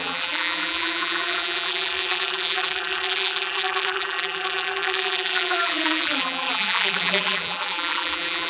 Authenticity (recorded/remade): remade